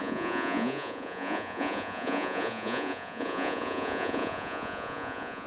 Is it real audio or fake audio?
fake